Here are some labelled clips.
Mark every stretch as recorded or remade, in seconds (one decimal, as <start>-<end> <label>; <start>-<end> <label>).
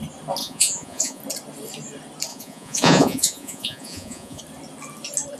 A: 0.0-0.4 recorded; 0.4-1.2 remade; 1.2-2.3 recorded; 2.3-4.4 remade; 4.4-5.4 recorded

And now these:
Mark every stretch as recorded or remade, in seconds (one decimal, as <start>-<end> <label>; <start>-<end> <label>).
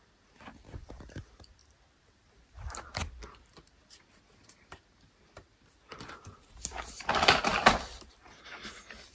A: 0.0-1.6 remade; 1.6-3.4 recorded; 3.4-9.1 remade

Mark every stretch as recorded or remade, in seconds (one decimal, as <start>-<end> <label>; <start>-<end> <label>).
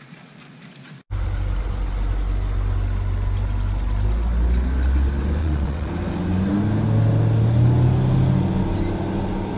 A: 0.0-5.4 recorded; 5.4-5.9 remade; 5.9-9.6 recorded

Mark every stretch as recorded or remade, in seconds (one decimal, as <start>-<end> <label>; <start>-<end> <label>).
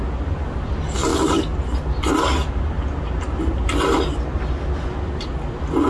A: 0.0-5.9 recorded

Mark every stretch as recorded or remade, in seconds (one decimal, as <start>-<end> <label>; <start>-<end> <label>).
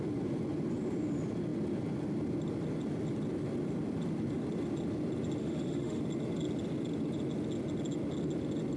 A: 0.0-5.4 recorded; 5.4-6.0 remade; 6.0-8.8 recorded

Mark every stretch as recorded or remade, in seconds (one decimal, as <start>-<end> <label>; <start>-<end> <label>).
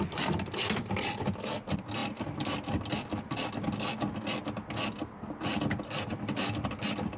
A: 0.0-7.2 recorded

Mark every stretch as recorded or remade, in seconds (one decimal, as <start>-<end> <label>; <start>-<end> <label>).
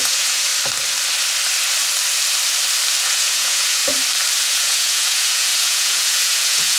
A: 0.0-0.5 remade; 0.5-3.0 recorded; 3.0-3.8 remade; 3.8-4.4 recorded; 4.4-6.8 remade